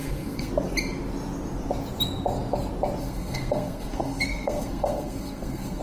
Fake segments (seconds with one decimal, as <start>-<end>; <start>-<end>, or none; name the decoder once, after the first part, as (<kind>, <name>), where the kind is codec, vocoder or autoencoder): 0.0-0.5 (codec, SNAC); 3.0-5.8